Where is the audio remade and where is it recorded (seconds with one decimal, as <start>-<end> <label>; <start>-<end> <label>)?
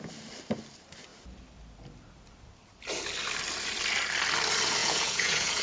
0.0-4.8 recorded; 4.8-5.6 remade